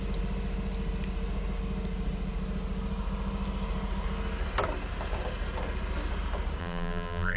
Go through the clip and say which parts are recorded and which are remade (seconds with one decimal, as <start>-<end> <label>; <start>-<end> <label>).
0.0-6.6 recorded; 6.6-7.4 remade